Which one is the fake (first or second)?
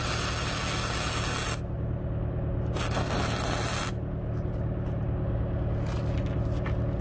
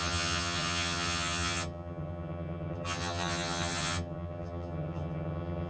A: second